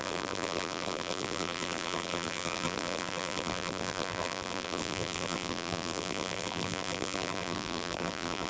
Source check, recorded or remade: remade